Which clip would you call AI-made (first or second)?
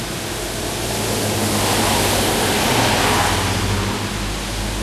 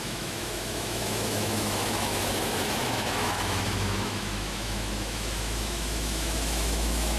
second